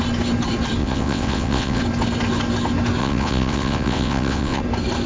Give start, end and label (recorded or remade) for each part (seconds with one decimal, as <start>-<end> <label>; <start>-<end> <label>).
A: 0.0-0.8 recorded; 0.8-1.8 remade; 1.8-3.0 recorded; 3.0-4.6 remade; 4.6-5.1 recorded

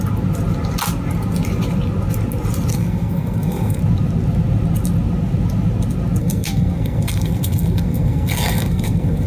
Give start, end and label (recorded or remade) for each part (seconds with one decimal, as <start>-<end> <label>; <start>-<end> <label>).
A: 0.0-2.7 recorded; 2.7-3.8 remade; 3.8-6.2 recorded; 6.2-9.3 remade

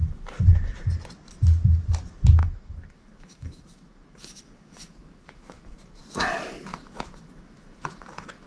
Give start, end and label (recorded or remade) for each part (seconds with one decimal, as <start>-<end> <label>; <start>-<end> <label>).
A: 0.0-2.4 recorded; 2.4-6.0 remade; 6.0-6.7 recorded; 6.7-8.5 remade

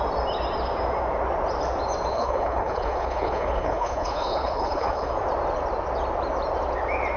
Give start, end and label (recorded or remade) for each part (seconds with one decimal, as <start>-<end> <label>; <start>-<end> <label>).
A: 0.0-2.1 recorded; 2.1-5.1 remade; 5.1-7.2 recorded